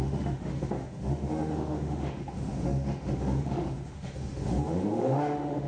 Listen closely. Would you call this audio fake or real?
fake